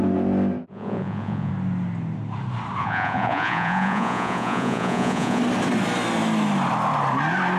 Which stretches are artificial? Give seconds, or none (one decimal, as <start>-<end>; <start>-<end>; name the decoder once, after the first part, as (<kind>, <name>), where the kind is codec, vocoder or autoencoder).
0.7-1.5 (vocoder, Vocos); 2.8-5.4